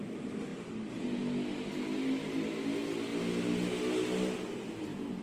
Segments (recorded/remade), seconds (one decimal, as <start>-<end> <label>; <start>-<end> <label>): 0.0-5.2 recorded

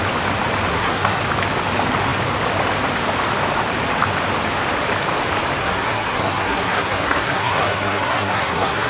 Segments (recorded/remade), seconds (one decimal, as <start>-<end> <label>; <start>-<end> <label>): 0.0-0.7 recorded; 0.7-1.2 remade; 1.2-5.6 recorded; 5.6-8.9 remade

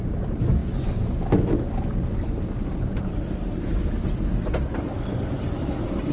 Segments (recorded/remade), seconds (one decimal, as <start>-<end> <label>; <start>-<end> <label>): 0.0-6.1 recorded

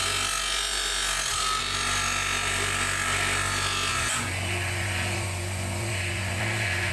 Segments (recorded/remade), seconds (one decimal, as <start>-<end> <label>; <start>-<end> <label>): 0.0-3.9 recorded; 3.9-6.9 remade